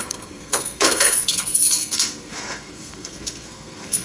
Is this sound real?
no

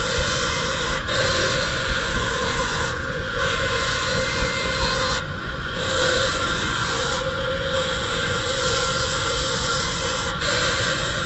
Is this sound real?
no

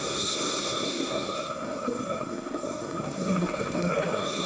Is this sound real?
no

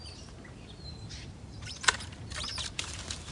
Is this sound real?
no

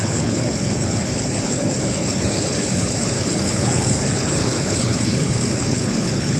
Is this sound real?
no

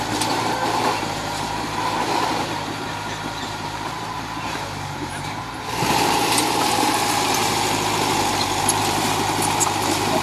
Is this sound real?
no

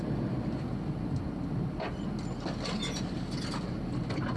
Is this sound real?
yes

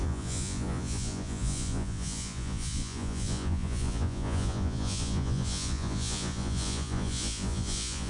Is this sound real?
no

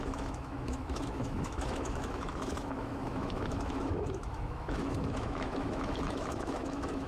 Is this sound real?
no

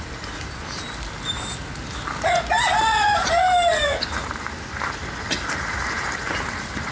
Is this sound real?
yes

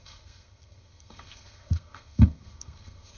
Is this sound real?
no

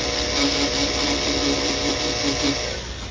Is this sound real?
yes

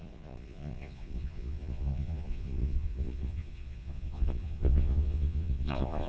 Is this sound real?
no